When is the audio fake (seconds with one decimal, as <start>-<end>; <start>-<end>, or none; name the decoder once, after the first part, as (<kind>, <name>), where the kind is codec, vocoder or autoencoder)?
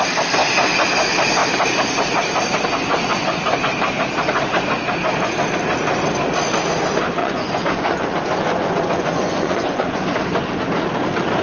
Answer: 7.2-10.2 (vocoder, Vocos)